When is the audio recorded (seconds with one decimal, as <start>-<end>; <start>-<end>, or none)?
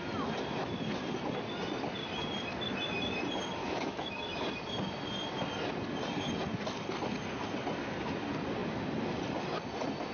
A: 0.0-3.6; 4.3-10.1